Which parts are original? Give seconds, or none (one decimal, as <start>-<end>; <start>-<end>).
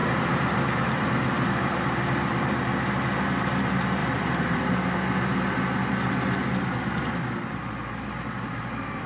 2.6-4.0; 4.6-6.5; 7.0-9.1